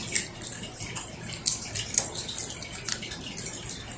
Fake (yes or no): no